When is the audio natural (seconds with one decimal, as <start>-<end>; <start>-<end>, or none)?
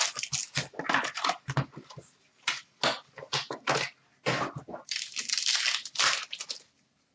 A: 0.0-7.1